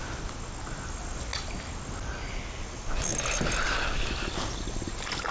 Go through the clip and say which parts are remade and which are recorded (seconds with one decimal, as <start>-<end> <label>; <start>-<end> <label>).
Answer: 0.0-5.3 recorded